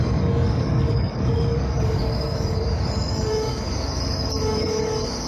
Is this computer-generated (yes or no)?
yes